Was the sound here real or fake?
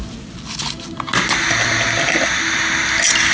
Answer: real